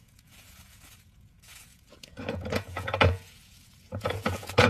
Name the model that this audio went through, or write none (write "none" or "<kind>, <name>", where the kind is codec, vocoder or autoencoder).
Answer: vocoder, Vocos